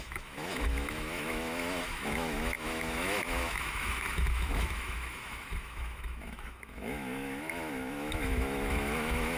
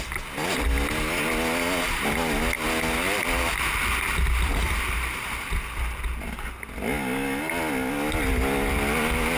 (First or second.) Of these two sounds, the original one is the second